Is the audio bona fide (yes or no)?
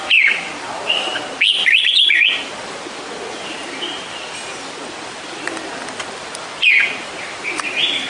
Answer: no